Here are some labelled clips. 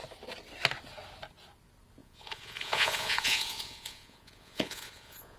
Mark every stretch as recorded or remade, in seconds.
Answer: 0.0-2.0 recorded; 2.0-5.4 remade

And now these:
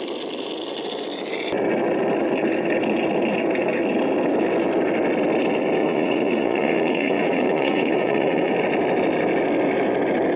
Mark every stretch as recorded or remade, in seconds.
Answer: 0.0-5.8 recorded; 5.8-8.5 remade; 8.5-10.4 recorded

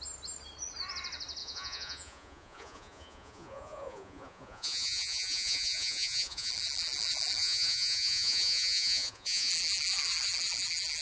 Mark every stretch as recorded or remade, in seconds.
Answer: 0.0-1.4 recorded; 1.4-6.5 remade; 6.5-7.4 recorded; 7.4-9.5 remade; 9.5-11.0 recorded

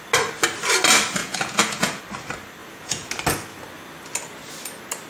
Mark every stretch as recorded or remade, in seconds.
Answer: 0.0-1.2 recorded; 1.2-2.0 remade; 2.0-2.6 recorded; 2.6-3.1 remade; 3.1-5.1 recorded

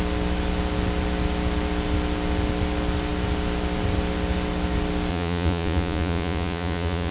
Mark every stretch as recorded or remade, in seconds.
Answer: 0.0-5.1 recorded; 5.1-7.1 remade

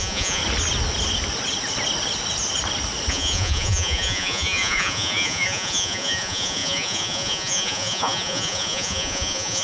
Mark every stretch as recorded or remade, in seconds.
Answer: 0.0-0.4 remade; 0.4-3.1 recorded; 3.1-9.6 remade